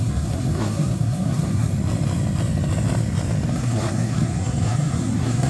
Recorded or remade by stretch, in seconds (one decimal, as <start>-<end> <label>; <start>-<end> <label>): 0.0-1.7 remade; 1.7-3.5 recorded; 3.5-5.5 remade